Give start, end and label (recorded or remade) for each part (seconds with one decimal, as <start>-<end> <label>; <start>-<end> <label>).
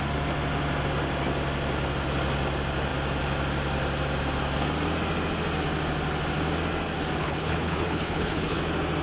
0.0-7.2 recorded; 7.2-8.6 remade; 8.6-9.0 recorded